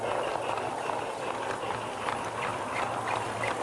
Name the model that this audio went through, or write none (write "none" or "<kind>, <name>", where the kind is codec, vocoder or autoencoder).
none